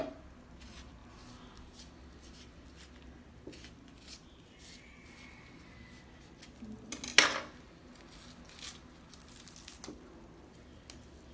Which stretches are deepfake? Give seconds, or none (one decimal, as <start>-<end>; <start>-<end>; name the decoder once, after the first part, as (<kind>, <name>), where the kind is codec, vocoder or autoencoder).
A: none